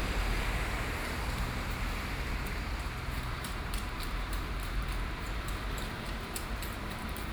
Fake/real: fake